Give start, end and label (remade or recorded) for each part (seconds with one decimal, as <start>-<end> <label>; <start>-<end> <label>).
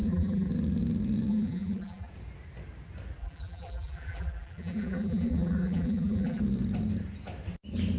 0.0-0.5 remade; 0.5-1.3 recorded; 1.3-2.1 remade; 2.1-3.2 recorded; 3.2-6.4 remade; 6.4-8.0 recorded